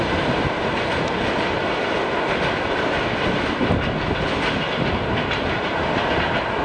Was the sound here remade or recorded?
recorded